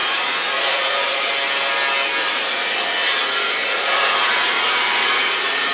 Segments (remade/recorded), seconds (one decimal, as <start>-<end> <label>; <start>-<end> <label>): 0.0-1.3 remade; 1.3-2.2 recorded; 2.2-5.7 remade